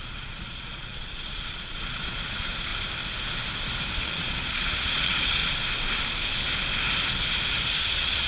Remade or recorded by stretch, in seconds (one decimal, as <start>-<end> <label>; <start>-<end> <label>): 0.0-2.7 remade; 2.7-4.0 recorded; 4.0-5.4 remade; 5.4-7.8 recorded; 7.8-8.3 remade